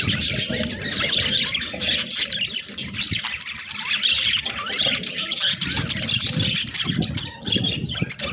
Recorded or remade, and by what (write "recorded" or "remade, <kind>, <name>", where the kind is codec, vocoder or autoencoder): recorded